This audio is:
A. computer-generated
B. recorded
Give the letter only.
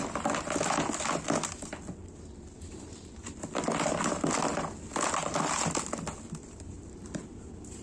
B